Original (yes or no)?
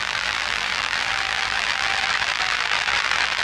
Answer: no